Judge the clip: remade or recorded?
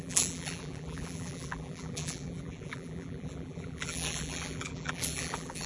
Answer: remade